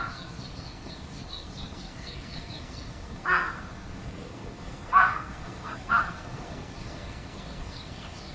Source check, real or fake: fake